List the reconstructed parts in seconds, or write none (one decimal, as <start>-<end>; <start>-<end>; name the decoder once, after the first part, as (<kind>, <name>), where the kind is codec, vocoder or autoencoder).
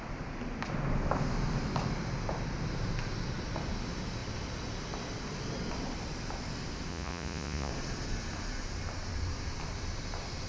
6.9-7.7 (vocoder, Vocos)